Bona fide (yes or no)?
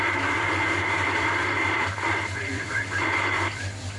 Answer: no